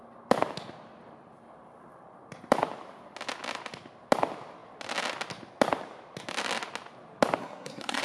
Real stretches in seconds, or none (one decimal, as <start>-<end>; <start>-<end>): 0.0-7.4